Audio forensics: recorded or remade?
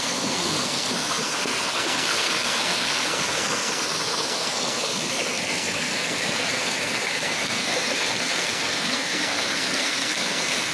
remade